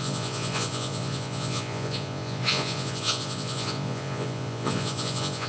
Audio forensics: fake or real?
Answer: fake